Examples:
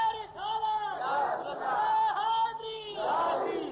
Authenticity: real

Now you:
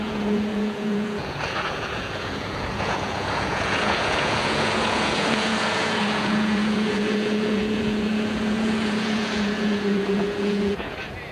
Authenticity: fake